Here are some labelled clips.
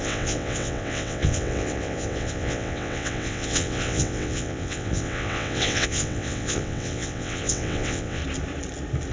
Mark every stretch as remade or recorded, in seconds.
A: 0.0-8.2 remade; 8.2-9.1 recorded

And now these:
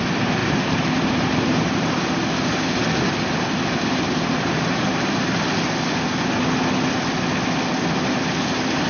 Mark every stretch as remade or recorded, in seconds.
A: 0.0-0.4 recorded; 0.4-2.0 remade; 2.0-3.5 recorded; 3.5-5.2 remade; 5.2-8.9 recorded

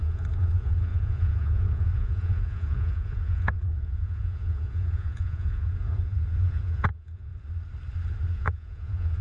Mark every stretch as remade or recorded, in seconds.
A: 0.0-7.3 remade; 7.3-8.3 recorded; 8.3-9.2 remade

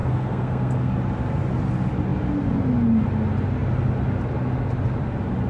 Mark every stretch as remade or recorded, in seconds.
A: 0.0-0.9 remade; 0.9-5.5 recorded

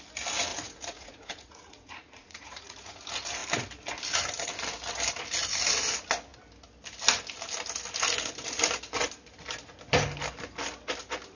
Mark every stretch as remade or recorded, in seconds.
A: 0.0-0.5 recorded; 0.5-3.0 remade; 3.0-11.4 recorded

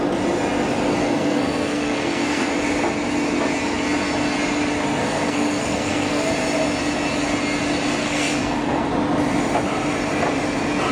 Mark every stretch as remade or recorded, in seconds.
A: 0.0-1.0 recorded; 1.0-2.5 remade; 2.5-5.0 recorded; 5.0-6.3 remade; 6.3-8.0 recorded; 8.0-8.9 remade; 8.9-10.9 recorded

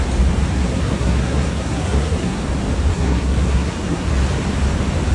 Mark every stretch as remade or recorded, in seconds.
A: 0.0-0.5 recorded; 0.5-2.4 remade; 2.4-2.9 recorded; 2.9-4.1 remade; 4.1-5.1 recorded